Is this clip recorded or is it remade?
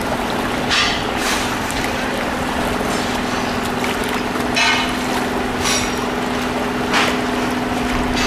recorded